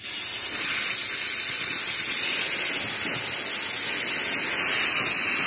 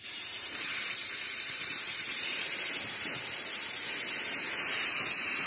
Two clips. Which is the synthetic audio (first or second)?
second